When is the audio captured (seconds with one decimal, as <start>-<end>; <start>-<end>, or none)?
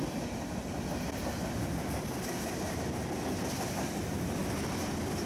0.0-5.3